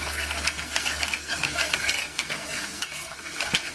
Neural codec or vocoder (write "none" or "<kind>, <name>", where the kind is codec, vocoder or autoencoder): codec, SNAC